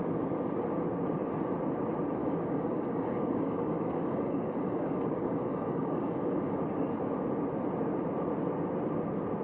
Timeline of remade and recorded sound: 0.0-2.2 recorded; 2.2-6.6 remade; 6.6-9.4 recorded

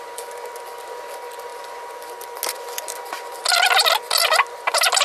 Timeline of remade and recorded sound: 0.0-5.0 recorded

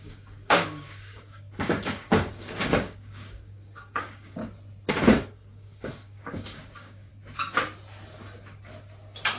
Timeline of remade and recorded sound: 0.0-4.4 remade; 4.4-4.9 recorded; 4.9-7.1 remade; 7.1-9.4 recorded

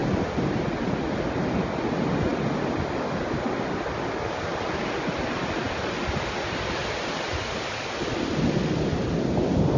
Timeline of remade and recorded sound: 0.0-9.8 recorded

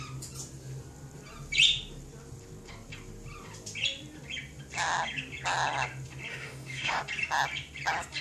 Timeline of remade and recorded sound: 0.0-6.3 recorded; 6.3-7.0 remade; 7.0-8.2 recorded